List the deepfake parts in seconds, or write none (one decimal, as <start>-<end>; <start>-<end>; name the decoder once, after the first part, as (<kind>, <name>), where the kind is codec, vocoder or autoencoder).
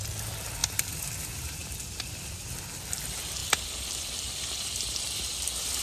0.6-2.9 (vocoder, BigVGAN v2); 3.4-5.8